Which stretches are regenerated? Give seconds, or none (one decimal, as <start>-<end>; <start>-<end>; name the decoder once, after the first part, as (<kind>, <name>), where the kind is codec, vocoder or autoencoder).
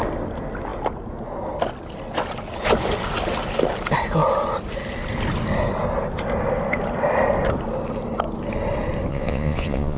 9.1-10.0 (vocoder, Vocos)